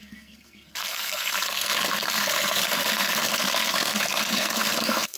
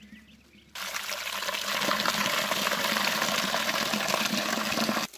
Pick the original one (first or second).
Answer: second